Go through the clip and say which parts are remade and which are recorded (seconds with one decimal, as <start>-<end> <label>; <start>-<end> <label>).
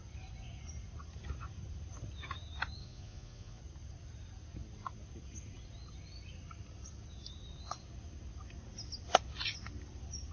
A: 0.0-2.8 recorded; 2.8-3.6 remade; 3.6-10.3 recorded